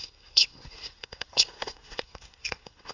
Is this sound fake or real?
fake